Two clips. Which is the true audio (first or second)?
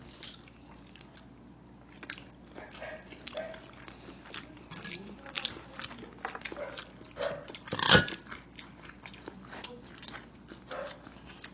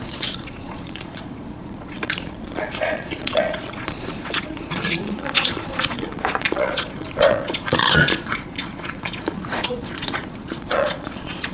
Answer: first